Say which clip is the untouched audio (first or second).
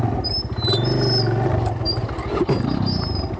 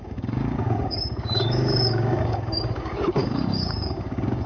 first